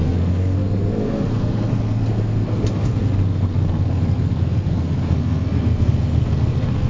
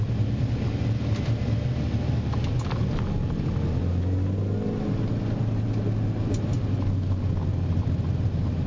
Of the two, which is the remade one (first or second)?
first